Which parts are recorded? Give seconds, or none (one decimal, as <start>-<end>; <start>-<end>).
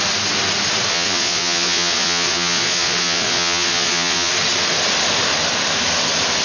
0.0-0.9; 4.3-6.4